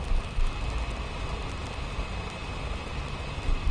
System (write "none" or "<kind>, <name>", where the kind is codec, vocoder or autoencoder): none